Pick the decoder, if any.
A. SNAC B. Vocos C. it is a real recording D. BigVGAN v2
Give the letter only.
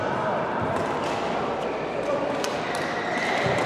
C